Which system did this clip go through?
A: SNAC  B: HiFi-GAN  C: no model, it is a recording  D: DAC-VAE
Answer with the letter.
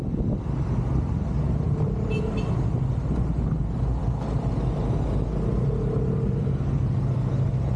C